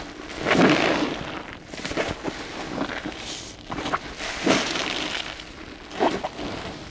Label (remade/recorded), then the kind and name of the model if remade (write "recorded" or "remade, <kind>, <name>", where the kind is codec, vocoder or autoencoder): remade, vocoder, BigVGAN v2